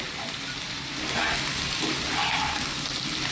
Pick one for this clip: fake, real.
real